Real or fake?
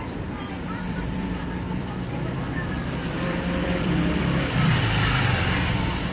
fake